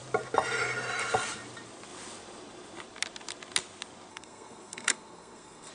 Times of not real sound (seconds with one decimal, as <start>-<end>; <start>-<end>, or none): 4.1-5.7